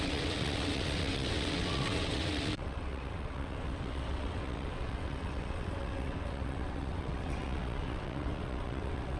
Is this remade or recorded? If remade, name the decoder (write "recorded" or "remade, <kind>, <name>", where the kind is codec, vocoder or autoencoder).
remade, vocoder, WaveNeXt